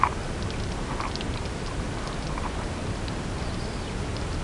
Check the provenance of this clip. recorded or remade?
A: recorded